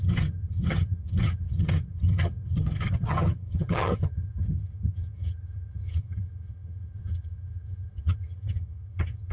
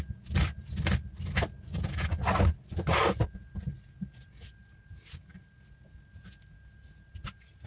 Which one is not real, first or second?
first